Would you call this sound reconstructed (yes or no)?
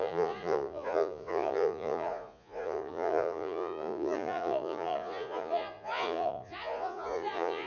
yes